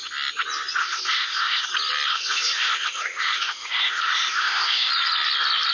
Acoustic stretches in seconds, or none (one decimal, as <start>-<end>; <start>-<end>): 0.0-0.8; 1.7-2.1; 4.9-5.7